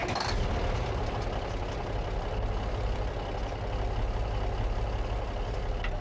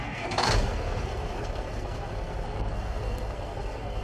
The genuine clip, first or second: first